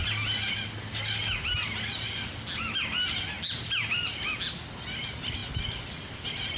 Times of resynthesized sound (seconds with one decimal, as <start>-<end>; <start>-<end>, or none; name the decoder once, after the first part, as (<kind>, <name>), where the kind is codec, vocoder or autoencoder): none